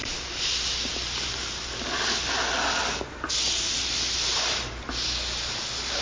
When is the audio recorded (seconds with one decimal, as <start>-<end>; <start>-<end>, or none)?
0.0-4.3; 4.8-6.0